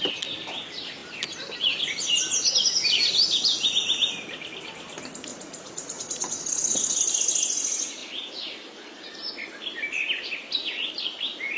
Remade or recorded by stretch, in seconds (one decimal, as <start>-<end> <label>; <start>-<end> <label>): 0.0-5.3 recorded; 5.3-7.0 remade; 7.0-11.6 recorded